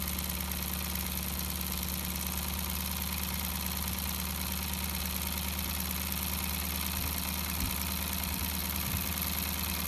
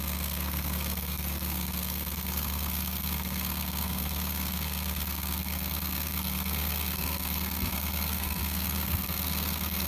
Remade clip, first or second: second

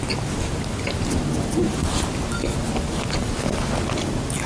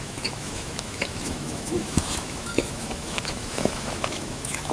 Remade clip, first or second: second